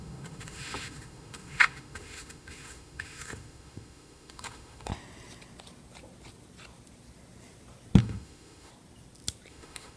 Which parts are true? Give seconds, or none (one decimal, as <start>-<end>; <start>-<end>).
4.9-8.0; 8.7-9.5